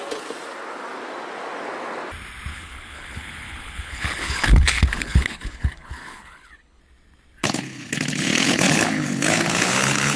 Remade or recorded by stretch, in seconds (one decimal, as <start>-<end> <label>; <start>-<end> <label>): 0.0-2.5 recorded; 2.5-6.8 remade; 6.8-7.4 recorded; 7.4-10.2 remade